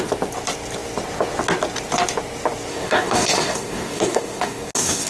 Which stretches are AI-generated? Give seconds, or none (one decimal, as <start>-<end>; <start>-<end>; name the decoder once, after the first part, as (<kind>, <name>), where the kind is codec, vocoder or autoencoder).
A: 2.7-5.1 (codec, DAC)